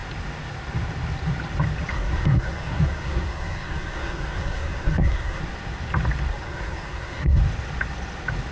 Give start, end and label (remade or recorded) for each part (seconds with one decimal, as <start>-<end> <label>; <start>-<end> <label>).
0.0-1.9 recorded; 1.9-5.4 remade; 5.4-6.3 recorded; 6.3-7.4 remade; 7.4-8.5 recorded